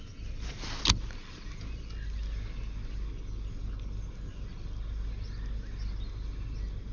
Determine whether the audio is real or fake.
real